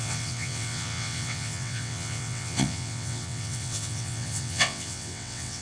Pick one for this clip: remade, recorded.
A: remade